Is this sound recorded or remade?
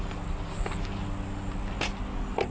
recorded